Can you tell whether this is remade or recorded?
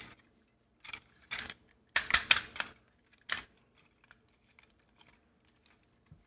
recorded